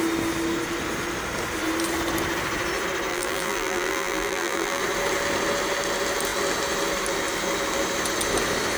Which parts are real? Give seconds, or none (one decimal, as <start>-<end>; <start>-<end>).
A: 0.0-3.1; 4.8-8.8